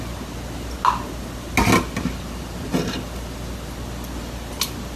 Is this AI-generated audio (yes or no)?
no